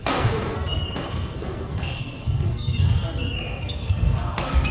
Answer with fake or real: fake